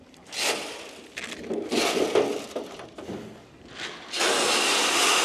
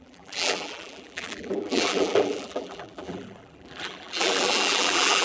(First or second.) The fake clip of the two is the second